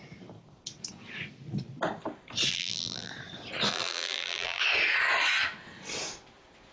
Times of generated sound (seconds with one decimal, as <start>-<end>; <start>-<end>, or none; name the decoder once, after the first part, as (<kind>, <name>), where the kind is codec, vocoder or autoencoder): 2.5-3.1 (vocoder, BigVGAN v2); 3.7-4.6